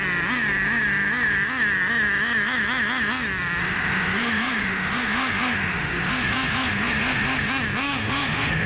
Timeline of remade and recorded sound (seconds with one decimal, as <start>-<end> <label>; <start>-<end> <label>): 0.0-3.6 recorded; 3.6-7.5 remade; 7.5-8.0 recorded; 8.0-8.7 remade